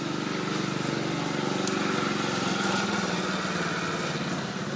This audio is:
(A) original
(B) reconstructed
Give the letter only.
A